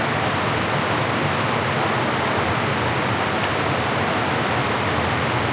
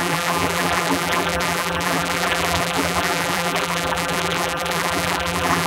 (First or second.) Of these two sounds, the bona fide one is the first